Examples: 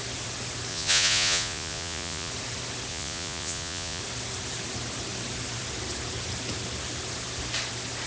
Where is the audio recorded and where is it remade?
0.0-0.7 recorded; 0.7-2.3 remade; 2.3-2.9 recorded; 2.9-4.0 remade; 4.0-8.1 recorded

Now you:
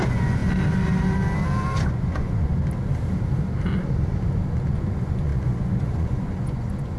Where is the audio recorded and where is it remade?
0.0-0.4 remade; 0.4-1.9 recorded; 1.9-2.5 remade; 2.5-4.7 recorded; 4.7-7.0 remade

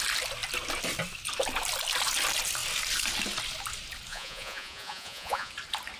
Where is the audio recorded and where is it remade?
0.0-4.1 recorded; 4.1-5.5 remade; 5.5-6.0 recorded

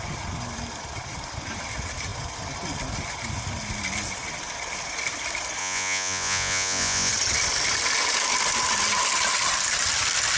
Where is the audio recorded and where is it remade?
0.0-5.6 recorded; 5.6-7.1 remade; 7.1-10.4 recorded

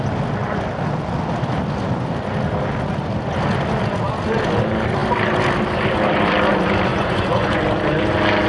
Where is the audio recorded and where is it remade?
0.0-6.9 recorded; 6.9-7.6 remade; 7.6-8.5 recorded

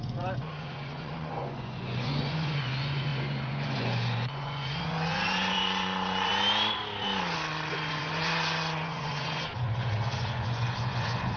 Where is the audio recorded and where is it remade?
0.0-6.3 remade; 6.3-7.7 recorded; 7.7-11.4 remade

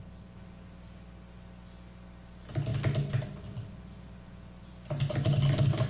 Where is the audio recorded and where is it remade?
0.0-5.9 recorded

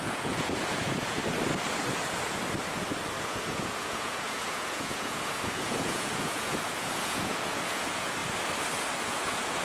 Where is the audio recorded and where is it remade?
0.0-1.2 remade; 1.2-3.2 recorded; 3.2-8.2 remade; 8.2-9.0 recorded; 9.0-9.6 remade